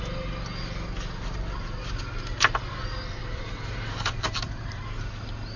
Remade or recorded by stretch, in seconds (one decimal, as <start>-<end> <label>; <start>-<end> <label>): 0.0-3.2 recorded; 3.2-4.8 remade; 4.8-5.6 recorded